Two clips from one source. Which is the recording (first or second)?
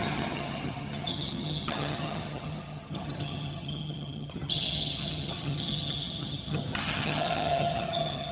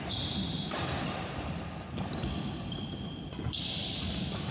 second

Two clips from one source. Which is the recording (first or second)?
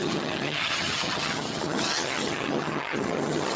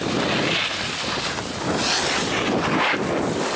second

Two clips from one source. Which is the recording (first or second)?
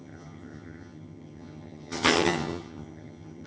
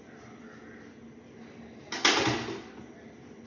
second